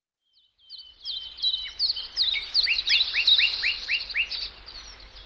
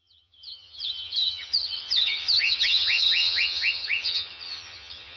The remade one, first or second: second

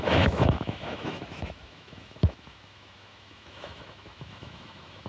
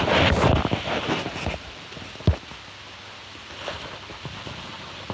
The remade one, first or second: first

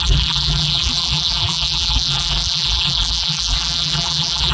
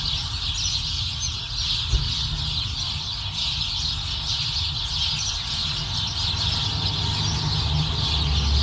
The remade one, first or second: first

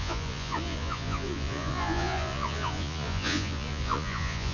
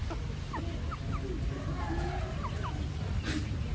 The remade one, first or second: first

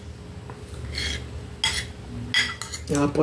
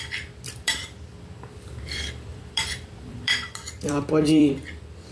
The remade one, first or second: second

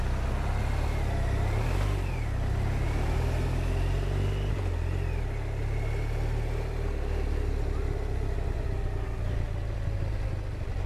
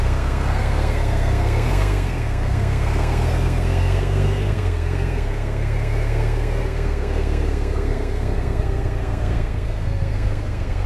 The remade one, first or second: second